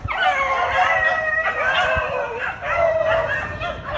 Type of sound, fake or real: real